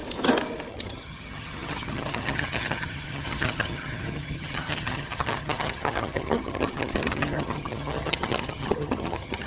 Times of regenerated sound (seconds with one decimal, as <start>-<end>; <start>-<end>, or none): 0.7-9.5